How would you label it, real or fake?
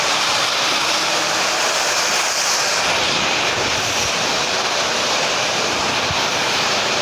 fake